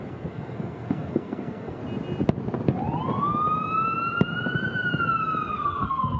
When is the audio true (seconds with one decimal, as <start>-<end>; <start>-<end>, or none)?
1.8-5.5